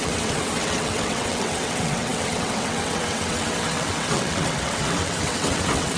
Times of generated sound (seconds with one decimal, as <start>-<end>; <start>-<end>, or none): 0.0-6.0